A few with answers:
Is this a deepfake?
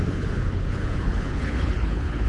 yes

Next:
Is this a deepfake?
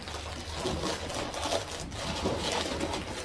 no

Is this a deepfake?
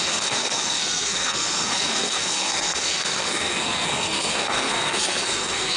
yes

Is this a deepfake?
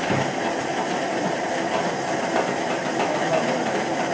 no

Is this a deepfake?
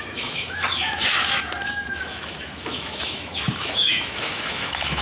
yes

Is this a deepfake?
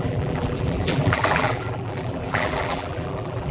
yes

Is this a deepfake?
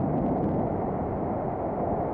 no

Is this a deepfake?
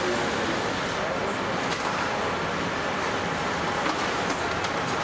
no